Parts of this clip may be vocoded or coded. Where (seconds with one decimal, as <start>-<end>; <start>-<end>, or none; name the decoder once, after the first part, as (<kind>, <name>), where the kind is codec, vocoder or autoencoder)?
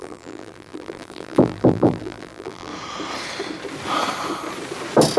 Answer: 0.0-2.7 (vocoder, BigVGAN v2)